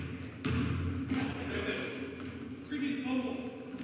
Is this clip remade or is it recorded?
recorded